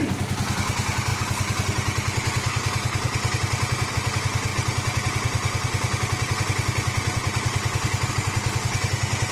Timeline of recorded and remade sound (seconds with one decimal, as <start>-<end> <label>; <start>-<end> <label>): 0.0-9.3 recorded